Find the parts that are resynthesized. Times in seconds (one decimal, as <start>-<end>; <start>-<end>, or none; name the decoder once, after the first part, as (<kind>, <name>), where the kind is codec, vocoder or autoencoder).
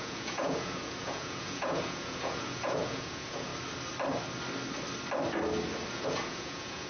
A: 0.0-3.5 (vocoder, Vocos); 5.9-6.9